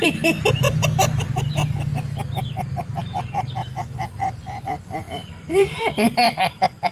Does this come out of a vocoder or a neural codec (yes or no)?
yes